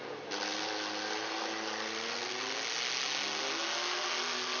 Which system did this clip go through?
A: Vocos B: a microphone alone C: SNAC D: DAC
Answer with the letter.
B